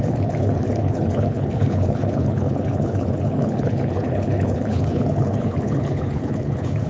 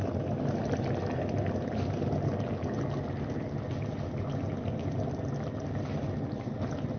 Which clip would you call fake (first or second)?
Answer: first